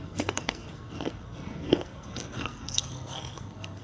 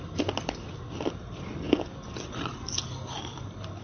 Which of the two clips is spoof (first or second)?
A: first